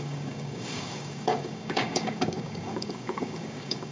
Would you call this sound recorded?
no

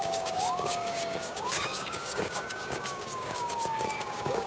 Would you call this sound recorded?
no